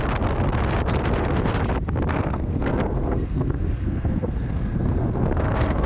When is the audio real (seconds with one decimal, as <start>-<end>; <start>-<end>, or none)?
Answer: 0.0-2.1